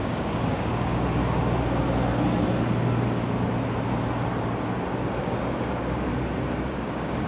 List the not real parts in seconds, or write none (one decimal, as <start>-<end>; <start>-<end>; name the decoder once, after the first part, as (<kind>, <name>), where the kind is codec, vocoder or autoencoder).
0.0-1.2 (codec, DAC); 5.2-6.1; 6.7-7.3